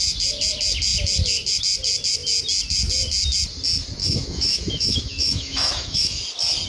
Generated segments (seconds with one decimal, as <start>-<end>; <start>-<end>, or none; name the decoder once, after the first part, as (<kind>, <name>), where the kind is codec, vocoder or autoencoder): 4.0-6.2 (autoencoder, DAC-VAE)